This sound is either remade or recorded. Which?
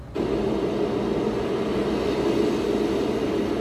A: recorded